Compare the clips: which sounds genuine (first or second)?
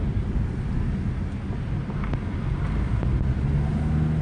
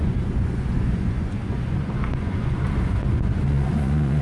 first